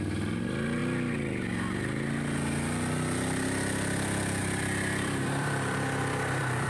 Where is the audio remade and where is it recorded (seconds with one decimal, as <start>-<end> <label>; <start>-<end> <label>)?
0.0-0.8 remade; 0.8-4.4 recorded; 4.4-6.7 remade